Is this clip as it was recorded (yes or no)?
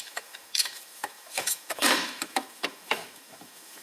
no